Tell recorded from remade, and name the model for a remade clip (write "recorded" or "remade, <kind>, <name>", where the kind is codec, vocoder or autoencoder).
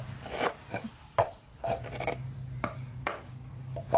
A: recorded